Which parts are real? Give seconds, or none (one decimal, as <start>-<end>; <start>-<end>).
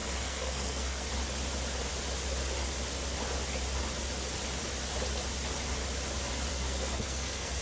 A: 1.1-6.5